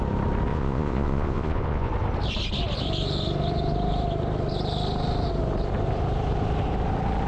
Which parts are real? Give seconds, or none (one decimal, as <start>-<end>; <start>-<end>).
0.0-0.5; 1.9-7.3